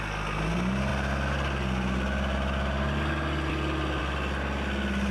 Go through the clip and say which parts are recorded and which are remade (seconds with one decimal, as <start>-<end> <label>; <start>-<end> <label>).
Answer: 0.0-5.1 recorded